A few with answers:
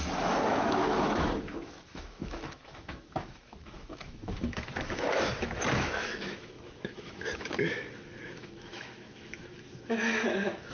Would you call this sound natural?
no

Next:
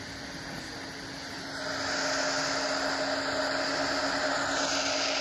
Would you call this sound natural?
yes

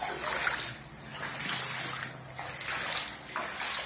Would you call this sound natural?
yes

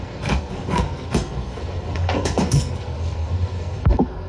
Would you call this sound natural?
no